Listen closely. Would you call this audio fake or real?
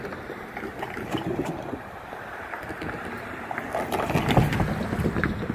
real